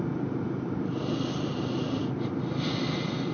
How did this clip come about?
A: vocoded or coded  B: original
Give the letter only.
B